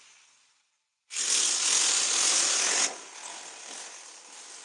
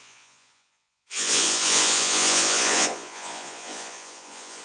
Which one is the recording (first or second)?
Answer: first